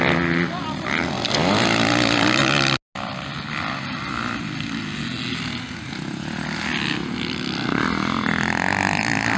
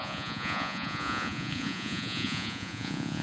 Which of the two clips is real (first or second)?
first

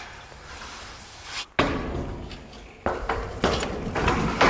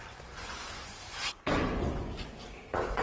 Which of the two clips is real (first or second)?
first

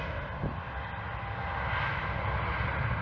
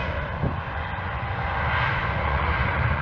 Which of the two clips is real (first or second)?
first